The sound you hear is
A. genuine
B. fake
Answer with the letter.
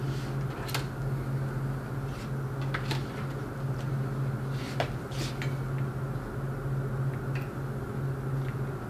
A